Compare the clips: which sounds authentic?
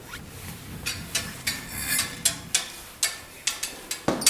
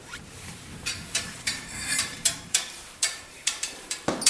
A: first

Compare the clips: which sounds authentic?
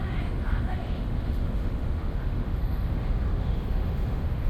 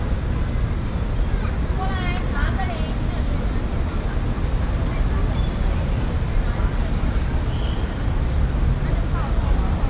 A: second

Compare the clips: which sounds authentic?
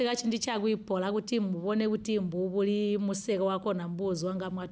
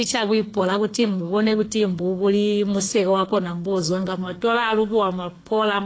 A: first